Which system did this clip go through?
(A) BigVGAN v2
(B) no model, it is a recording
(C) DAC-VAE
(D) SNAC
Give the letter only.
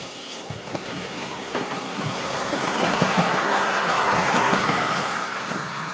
D